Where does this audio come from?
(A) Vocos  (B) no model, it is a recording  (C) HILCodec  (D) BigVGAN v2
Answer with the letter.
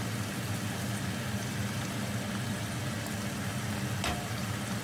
B